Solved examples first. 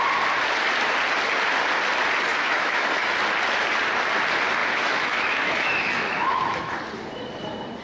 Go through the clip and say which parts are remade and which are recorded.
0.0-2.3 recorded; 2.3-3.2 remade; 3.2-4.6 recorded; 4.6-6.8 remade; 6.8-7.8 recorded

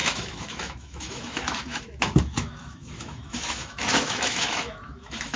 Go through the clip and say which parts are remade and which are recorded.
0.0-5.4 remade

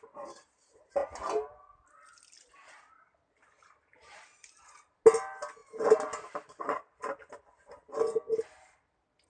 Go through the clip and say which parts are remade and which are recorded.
0.0-9.3 recorded